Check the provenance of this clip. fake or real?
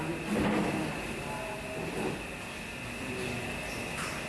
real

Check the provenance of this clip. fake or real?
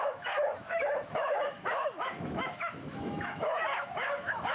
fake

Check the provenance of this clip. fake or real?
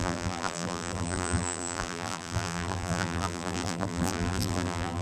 fake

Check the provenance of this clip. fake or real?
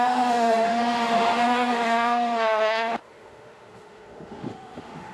fake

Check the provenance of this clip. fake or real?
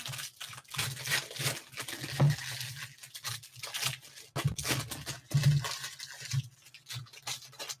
real